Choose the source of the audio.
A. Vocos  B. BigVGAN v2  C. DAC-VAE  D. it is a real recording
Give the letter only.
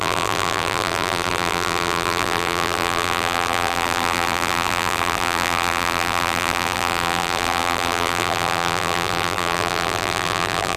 B